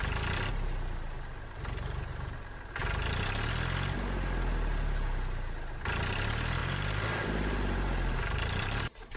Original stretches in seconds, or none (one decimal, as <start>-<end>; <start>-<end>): 0.0-6.6